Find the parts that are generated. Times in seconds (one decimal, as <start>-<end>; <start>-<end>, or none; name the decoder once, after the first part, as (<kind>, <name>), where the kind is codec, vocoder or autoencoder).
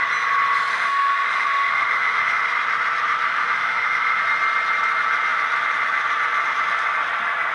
0.7-2.4 (autoencoder, DAC-VAE); 3.3-4.2